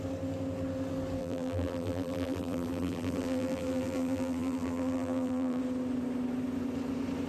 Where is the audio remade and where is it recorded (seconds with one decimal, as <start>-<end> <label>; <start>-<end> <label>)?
0.0-1.2 recorded; 1.2-5.6 remade; 5.6-7.3 recorded